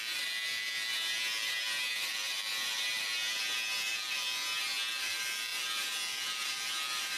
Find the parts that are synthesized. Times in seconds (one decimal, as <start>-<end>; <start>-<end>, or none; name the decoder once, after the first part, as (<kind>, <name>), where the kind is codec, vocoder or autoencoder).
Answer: 0.0-0.9 (vocoder, BigVGAN v2); 1.9-2.5; 3.9-4.4; 4.9-7.2

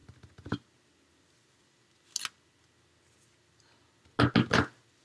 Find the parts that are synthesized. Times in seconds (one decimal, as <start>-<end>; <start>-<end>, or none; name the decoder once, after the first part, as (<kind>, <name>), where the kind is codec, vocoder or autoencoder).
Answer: none

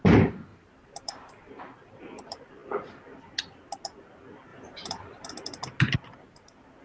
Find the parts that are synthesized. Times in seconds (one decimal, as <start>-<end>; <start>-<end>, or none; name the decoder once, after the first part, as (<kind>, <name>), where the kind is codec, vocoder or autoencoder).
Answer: 0.5-1.5 (vocoder, BigVGAN v2); 4.5-5.3

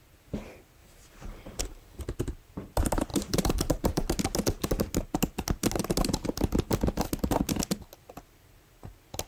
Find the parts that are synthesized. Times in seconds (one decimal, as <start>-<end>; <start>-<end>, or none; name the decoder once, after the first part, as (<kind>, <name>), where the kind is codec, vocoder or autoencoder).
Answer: 0.8-2.0 (vocoder, BigVGAN v2); 3.1-4.1

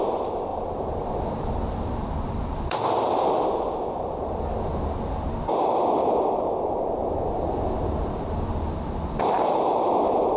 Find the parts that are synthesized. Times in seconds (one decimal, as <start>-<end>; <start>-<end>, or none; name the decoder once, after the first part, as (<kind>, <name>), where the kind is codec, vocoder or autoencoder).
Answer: 0.5-2.8 (vocoder, BigVGAN v2)

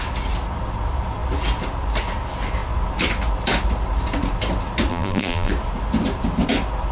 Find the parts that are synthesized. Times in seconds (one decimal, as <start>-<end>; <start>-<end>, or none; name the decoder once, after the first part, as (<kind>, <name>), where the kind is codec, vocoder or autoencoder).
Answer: 4.9-5.5 (vocoder, BigVGAN v2)

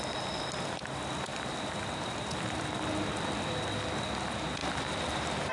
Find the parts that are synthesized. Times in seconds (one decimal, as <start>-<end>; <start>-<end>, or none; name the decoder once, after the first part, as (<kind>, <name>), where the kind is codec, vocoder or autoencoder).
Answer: 0.0-5.5 (vocoder, BigVGAN v2)

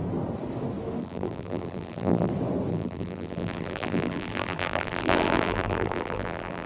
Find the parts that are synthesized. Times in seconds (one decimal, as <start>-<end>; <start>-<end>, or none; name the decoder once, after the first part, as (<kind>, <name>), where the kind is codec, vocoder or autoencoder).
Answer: 1.0-2.3 (vocoder, BigVGAN v2); 2.7-6.7